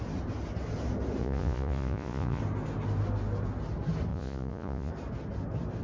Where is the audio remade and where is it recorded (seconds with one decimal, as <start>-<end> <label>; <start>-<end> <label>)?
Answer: 0.0-1.2 recorded; 1.2-2.4 remade; 2.4-4.1 recorded; 4.1-4.9 remade; 4.9-5.8 recorded